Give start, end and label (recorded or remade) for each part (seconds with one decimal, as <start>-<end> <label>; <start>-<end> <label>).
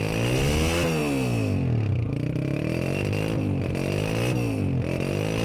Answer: 0.0-5.4 recorded